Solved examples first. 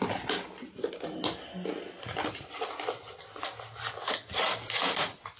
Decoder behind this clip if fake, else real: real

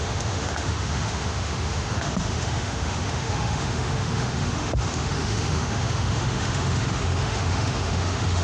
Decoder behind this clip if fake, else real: fake, autoencoder, DAC-VAE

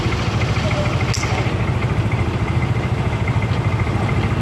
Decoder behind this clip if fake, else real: real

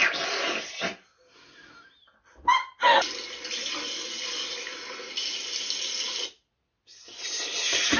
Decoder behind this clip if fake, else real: real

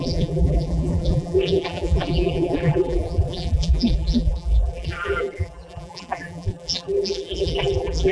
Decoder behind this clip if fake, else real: fake, vocoder, BigVGAN v2